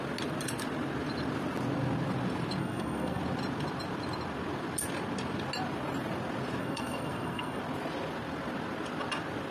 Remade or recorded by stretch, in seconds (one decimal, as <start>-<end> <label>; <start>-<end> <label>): 0.0-2.6 recorded; 2.6-3.2 remade; 3.2-6.6 recorded; 6.6-7.6 remade; 7.6-9.5 recorded